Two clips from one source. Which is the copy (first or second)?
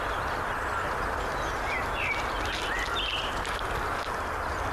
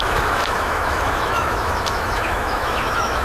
second